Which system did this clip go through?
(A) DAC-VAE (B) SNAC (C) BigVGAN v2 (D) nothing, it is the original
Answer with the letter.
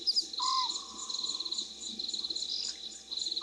D